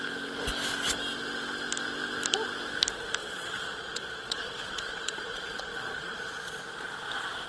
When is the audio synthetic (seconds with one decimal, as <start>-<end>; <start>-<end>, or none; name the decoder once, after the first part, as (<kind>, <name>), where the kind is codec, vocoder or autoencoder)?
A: 3.2-6.6 (vocoder, Vocos)